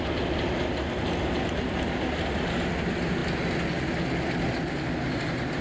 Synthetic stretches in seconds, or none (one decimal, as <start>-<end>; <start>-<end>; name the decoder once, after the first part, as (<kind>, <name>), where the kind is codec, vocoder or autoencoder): none